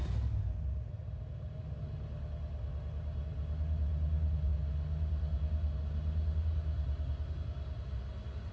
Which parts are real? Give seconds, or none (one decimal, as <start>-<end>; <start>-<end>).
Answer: 0.0-8.5